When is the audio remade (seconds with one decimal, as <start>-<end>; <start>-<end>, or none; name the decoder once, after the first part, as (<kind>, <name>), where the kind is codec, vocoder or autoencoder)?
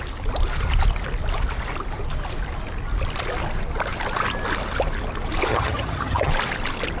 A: 5.5-6.3 (vocoder, HiFi-GAN)